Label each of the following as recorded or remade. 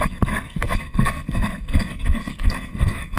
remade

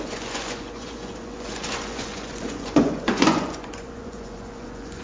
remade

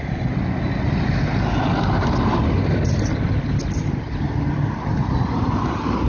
recorded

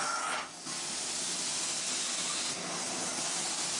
recorded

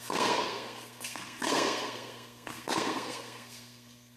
remade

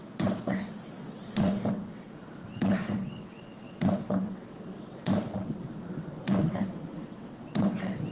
remade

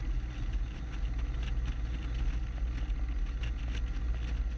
recorded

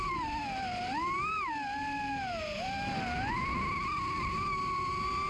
recorded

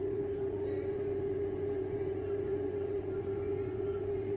remade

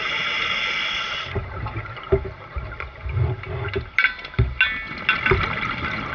recorded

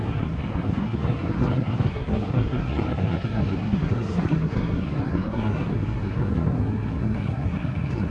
remade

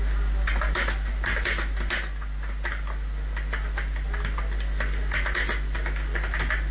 recorded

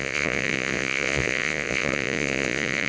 remade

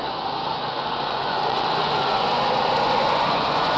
remade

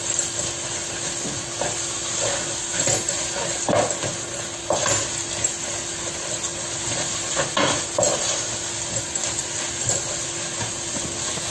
recorded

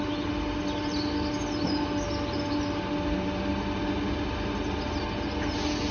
recorded